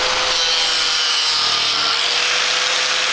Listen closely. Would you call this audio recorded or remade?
recorded